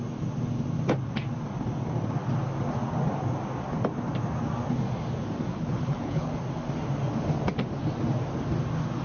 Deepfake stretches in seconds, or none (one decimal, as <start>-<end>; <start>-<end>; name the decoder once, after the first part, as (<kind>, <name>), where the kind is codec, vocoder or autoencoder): 5.5-6.3 (codec, HILCodec)